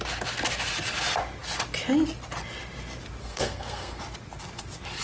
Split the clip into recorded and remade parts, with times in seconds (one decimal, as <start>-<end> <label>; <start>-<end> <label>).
0.0-3.2 recorded; 3.2-4.0 remade; 4.0-5.0 recorded